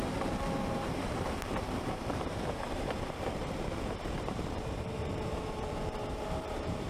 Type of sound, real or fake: fake